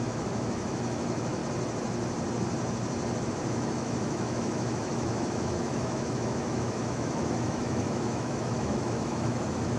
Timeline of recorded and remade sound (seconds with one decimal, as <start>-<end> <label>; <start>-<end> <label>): 0.0-1.4 remade; 1.4-3.3 recorded; 3.3-9.8 remade